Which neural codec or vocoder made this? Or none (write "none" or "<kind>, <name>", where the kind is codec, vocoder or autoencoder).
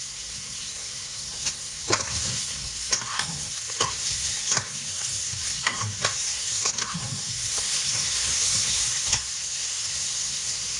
codec, SNAC